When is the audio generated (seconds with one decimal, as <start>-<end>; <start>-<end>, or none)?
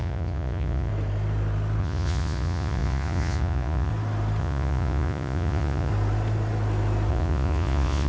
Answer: 0.0-0.9; 1.8-3.9; 4.4-5.9; 7.1-8.1